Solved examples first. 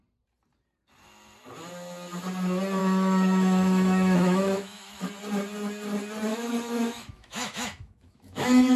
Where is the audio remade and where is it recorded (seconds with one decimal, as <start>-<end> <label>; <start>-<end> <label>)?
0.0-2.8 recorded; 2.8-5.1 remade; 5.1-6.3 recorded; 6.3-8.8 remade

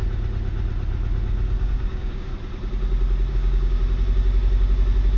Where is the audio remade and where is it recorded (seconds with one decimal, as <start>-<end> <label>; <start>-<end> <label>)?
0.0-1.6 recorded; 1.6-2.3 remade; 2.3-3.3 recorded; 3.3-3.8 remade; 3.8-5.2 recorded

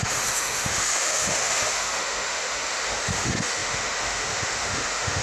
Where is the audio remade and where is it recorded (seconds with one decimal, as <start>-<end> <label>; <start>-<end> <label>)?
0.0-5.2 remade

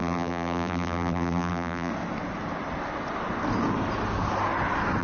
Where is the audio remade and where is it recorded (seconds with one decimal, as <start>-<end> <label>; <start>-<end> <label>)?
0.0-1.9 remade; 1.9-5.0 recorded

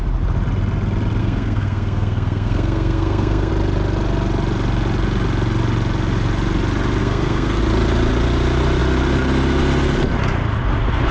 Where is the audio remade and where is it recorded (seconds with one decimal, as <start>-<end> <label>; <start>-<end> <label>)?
0.0-1.2 recorded; 1.2-3.5 remade; 3.5-7.0 recorded; 7.0-7.6 remade; 7.6-11.1 recorded

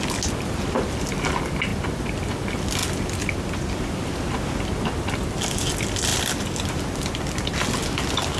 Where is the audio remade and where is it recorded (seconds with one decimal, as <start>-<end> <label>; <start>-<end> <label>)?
0.0-6.1 recorded; 6.1-8.4 remade

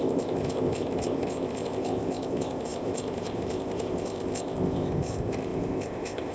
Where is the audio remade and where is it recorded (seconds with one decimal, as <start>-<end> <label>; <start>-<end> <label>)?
0.0-6.3 remade